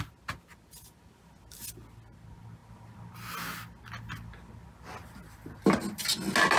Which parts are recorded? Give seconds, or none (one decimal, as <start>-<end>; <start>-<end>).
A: 0.0-6.6